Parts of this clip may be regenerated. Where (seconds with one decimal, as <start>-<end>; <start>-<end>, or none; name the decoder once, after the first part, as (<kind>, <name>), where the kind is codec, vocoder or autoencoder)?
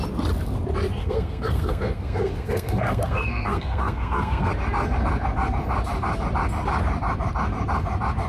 1.0-4.5 (codec, SNAC)